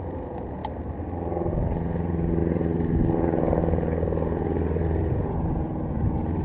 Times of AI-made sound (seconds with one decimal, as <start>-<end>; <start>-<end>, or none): 0.0-0.6; 1.5-6.4